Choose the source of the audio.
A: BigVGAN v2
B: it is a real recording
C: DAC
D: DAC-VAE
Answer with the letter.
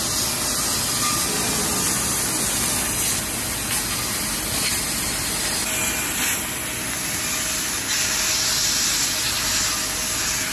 B